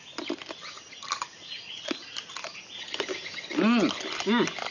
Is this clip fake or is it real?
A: real